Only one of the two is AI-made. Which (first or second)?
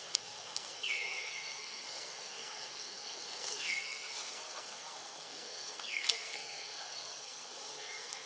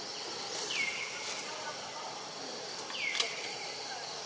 first